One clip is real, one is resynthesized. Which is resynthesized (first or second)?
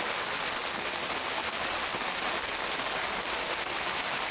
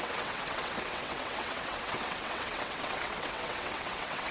second